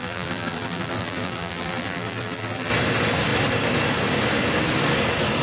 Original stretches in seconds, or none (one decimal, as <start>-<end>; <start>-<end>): 2.7-5.4